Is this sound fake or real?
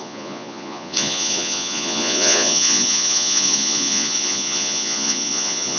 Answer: fake